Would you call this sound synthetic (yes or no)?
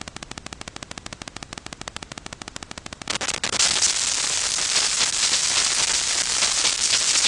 no